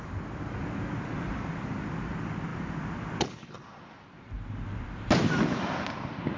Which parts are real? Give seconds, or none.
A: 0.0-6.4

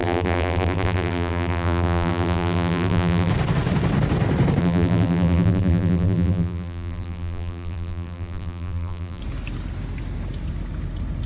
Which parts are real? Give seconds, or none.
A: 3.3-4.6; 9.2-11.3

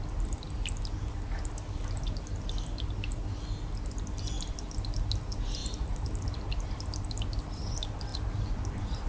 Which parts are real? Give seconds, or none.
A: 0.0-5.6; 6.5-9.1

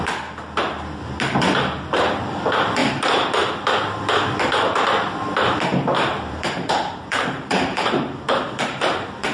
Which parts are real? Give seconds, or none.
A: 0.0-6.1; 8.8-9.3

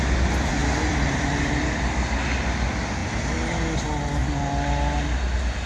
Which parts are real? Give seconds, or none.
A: 0.0-0.6; 1.3-5.7

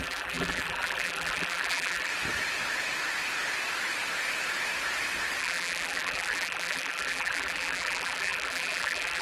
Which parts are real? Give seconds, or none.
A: 2.1-5.4